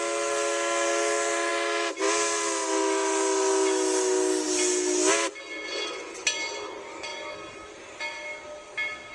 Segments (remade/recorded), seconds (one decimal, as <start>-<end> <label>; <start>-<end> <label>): 0.0-9.1 recorded